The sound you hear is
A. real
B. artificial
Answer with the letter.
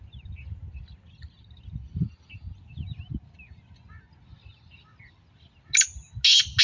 A